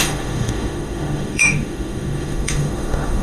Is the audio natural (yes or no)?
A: no